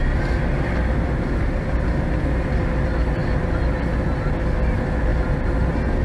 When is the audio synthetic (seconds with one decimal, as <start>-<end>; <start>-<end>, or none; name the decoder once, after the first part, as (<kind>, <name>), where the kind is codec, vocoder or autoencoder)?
none